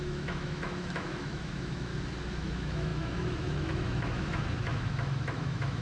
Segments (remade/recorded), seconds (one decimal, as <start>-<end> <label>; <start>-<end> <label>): 0.0-1.9 remade; 1.9-2.4 recorded; 2.4-5.8 remade